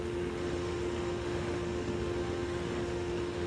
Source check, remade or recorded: remade